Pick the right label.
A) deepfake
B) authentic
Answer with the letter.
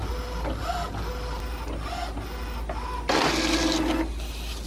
B